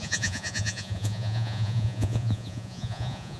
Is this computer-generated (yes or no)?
yes